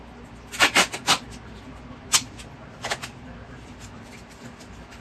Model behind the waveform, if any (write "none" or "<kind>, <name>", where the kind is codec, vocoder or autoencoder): none